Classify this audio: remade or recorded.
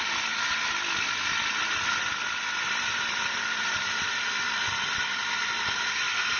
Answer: recorded